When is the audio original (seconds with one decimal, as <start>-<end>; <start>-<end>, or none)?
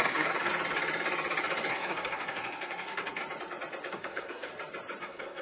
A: 0.5-1.7; 3.2-3.9; 4.5-5.0